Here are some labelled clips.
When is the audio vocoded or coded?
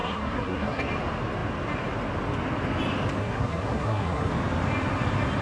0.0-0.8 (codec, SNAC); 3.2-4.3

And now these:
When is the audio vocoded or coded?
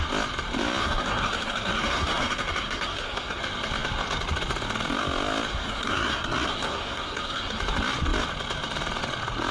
0.8-3.4 (codec, SNAC); 5.5-7.6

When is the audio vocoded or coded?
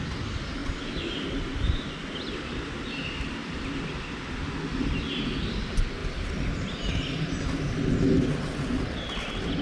none